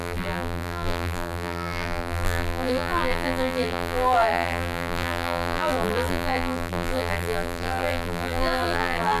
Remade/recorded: remade